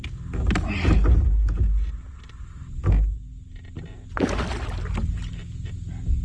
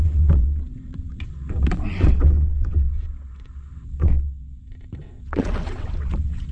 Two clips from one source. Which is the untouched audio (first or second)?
first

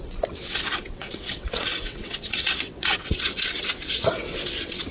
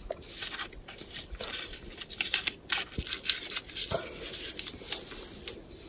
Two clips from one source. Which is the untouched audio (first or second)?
second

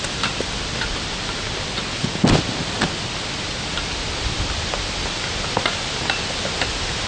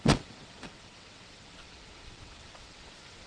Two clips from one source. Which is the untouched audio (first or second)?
first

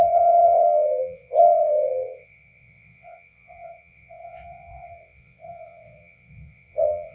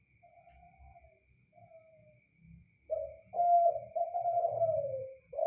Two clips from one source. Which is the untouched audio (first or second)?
second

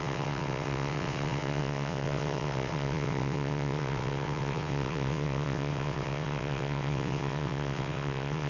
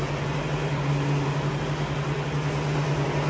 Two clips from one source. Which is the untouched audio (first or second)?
second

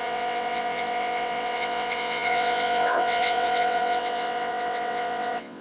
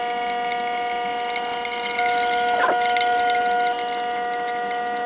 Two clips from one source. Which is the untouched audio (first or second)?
second